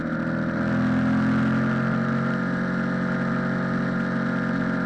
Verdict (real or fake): real